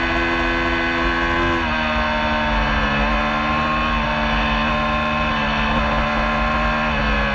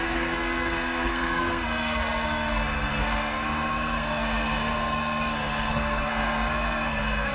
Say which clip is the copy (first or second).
second